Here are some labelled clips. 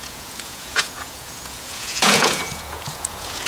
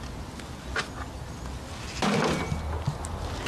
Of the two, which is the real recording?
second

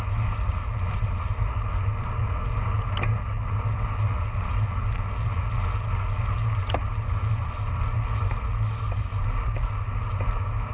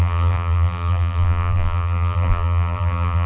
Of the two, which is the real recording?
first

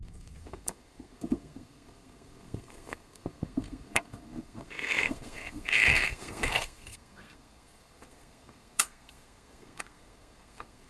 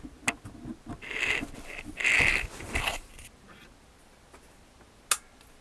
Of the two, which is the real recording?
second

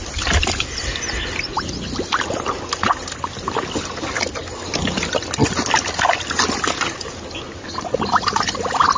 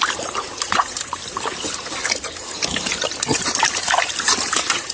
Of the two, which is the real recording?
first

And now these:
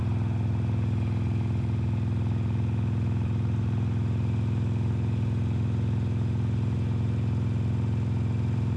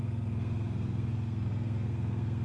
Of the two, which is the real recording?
first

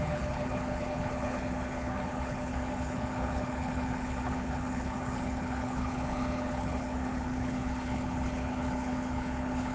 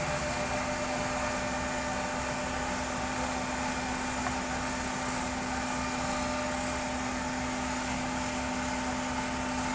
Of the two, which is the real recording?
second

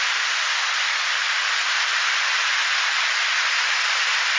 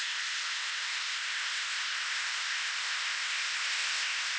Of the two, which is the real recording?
first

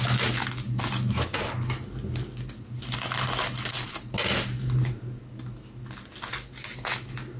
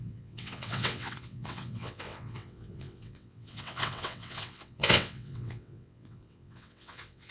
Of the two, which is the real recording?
first